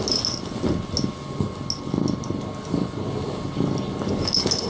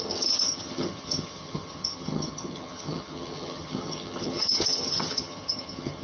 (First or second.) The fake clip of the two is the second